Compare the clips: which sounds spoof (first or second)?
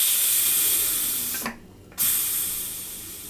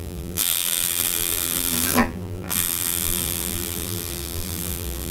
second